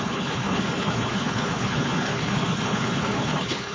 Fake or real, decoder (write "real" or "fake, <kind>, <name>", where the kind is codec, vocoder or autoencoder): fake, codec, HILCodec